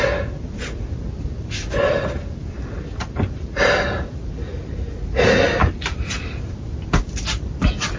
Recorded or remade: recorded